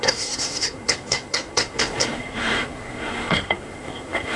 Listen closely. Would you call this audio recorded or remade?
remade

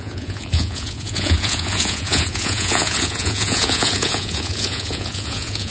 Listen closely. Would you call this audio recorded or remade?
remade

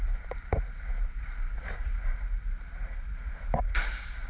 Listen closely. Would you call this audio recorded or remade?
remade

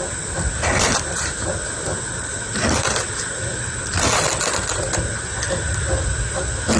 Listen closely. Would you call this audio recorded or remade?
recorded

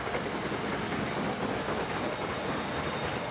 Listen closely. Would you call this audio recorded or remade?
recorded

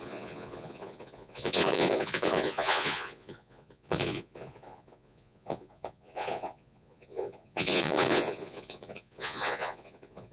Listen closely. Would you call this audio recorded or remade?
remade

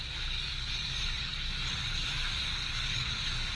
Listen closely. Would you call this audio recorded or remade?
remade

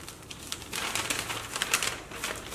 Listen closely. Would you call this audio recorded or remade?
recorded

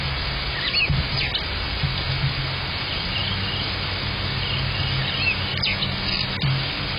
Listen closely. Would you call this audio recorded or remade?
recorded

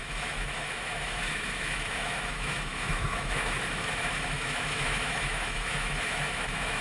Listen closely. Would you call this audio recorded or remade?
remade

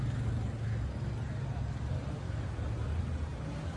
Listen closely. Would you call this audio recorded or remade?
recorded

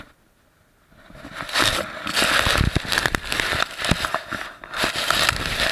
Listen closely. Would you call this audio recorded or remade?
recorded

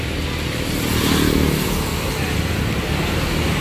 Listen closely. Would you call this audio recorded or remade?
recorded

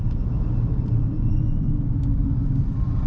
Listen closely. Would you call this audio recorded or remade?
recorded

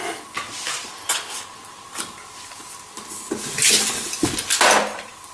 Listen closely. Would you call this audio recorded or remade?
recorded